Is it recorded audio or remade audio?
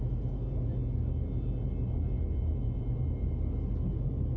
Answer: recorded